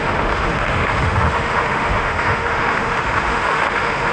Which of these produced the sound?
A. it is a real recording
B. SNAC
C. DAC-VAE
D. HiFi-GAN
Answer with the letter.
C